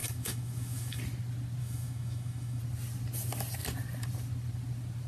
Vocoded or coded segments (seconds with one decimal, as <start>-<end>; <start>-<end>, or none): 0.0-1.0; 1.6-2.6